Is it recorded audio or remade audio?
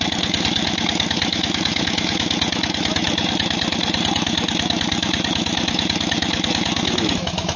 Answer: remade